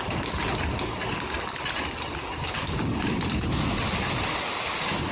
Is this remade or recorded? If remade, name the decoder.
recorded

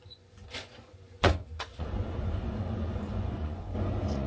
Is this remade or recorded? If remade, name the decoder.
remade, vocoder, Vocos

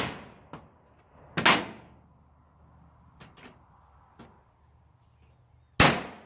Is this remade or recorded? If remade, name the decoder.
recorded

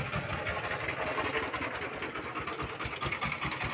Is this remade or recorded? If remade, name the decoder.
recorded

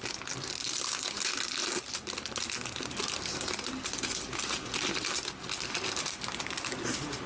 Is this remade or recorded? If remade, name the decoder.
recorded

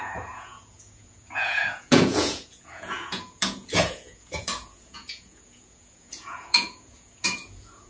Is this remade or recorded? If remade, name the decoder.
remade, vocoder, Vocos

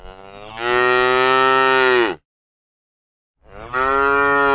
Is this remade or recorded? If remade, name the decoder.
recorded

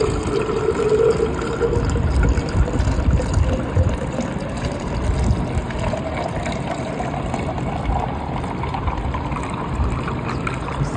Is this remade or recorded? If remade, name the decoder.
recorded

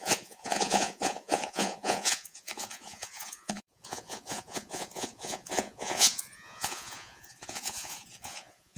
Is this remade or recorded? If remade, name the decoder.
remade, vocoder, Vocos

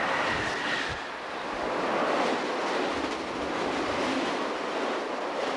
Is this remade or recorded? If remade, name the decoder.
recorded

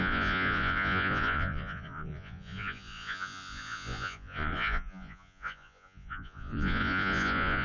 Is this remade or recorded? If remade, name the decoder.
remade, vocoder, Vocos